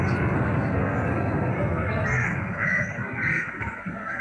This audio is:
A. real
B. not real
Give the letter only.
B